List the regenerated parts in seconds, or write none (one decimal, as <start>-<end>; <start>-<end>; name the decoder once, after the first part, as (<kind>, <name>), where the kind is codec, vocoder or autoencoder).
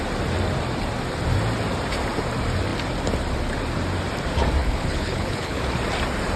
4.6-5.6 (codec, HILCodec)